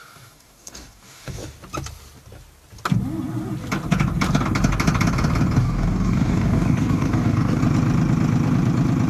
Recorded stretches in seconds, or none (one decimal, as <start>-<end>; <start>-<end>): 1.4-5.6; 7.6-9.1